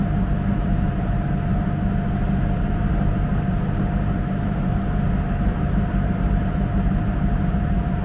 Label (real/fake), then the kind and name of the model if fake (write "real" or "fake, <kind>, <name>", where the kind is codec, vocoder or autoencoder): fake, vocoder, BigVGAN v2